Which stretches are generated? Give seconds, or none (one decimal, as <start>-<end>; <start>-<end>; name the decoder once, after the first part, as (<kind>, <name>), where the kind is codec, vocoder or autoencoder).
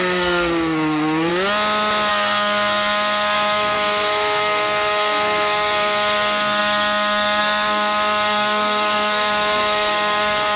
0.0-1.3 (codec, SNAC); 2.1-10.6